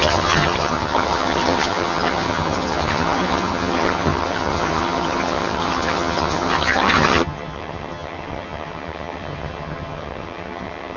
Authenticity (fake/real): fake